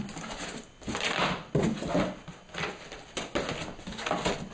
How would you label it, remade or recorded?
recorded